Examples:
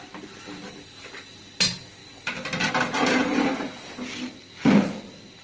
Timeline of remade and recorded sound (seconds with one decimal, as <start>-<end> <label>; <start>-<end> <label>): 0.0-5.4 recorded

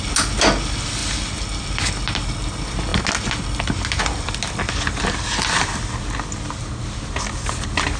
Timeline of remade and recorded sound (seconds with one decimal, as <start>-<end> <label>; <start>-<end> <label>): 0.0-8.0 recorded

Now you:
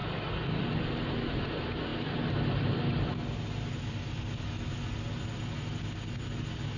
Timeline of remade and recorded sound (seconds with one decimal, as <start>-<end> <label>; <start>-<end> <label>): 0.0-6.8 recorded